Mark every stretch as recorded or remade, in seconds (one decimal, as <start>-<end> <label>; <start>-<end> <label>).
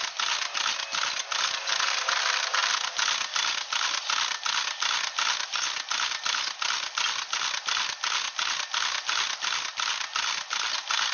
0.0-11.1 recorded